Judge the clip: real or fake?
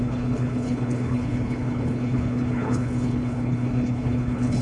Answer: fake